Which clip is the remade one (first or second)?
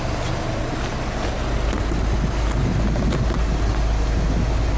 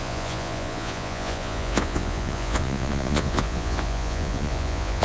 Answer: second